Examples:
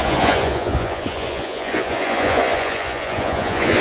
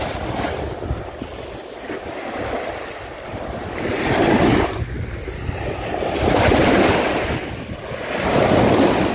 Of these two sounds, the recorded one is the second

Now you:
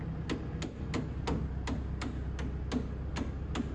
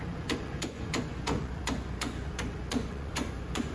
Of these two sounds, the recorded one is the first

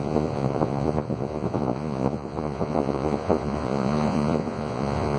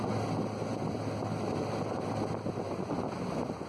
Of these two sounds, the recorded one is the second